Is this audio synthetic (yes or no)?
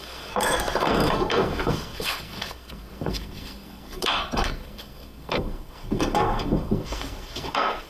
yes